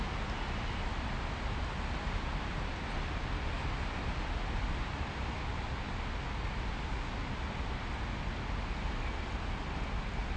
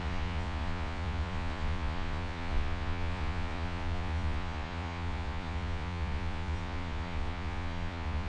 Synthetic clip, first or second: second